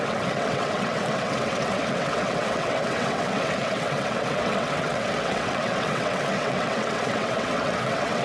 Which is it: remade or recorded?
remade